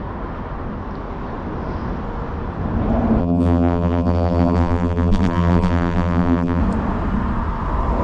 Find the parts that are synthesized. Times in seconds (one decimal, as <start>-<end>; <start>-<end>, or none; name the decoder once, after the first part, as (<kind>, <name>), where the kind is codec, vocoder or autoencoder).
3.2-6.6 (vocoder, BigVGAN v2)